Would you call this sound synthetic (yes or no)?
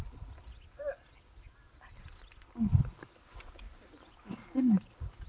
no